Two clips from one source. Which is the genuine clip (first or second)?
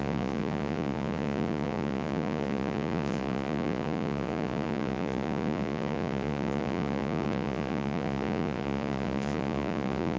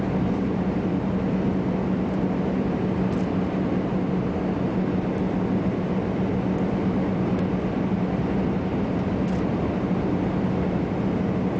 second